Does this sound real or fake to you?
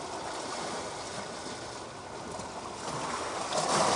real